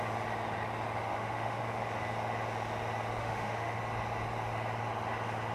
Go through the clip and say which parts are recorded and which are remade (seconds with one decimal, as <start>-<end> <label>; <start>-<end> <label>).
0.0-1.0 recorded; 1.0-1.6 remade; 1.6-3.2 recorded; 3.2-3.8 remade; 3.8-5.5 recorded